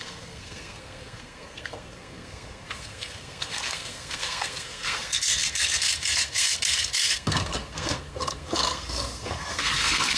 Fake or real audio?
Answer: fake